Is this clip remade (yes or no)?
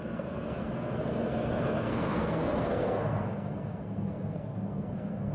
yes